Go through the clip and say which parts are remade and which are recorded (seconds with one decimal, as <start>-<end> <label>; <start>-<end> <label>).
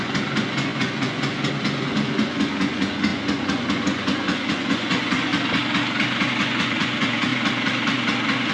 0.0-5.3 remade; 5.3-6.4 recorded; 6.4-7.3 remade; 7.3-8.5 recorded